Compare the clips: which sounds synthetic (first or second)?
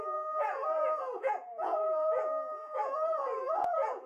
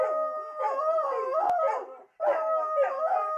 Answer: first